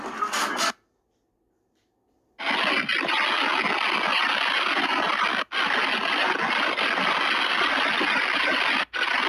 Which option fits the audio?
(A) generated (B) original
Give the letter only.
B